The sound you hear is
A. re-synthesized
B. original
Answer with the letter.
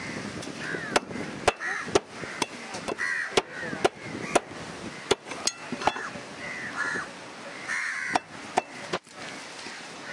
B